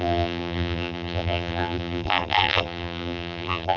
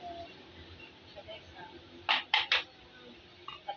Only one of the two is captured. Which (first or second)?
second